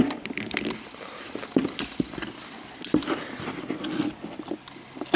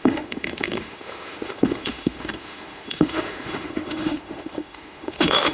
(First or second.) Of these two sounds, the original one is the first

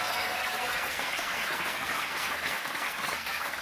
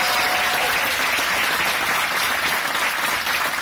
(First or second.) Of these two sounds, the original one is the second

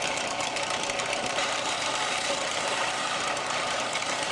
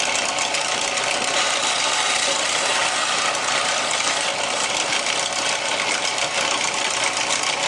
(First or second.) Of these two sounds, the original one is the second